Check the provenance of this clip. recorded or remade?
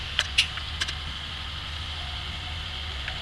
remade